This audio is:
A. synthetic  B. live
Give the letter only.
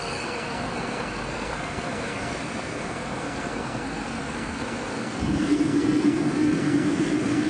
A